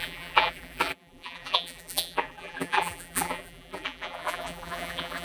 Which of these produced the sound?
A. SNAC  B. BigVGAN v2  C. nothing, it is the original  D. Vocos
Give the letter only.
B